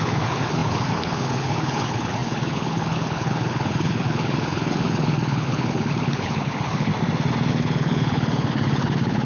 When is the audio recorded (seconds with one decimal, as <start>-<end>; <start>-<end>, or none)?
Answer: 6.9-7.5